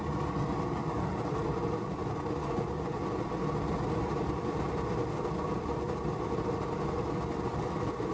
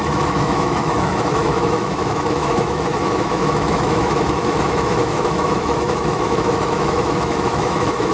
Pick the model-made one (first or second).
second